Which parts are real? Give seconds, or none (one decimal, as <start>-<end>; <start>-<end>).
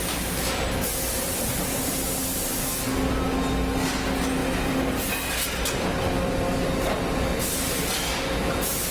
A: 0.0-2.6; 3.1-8.9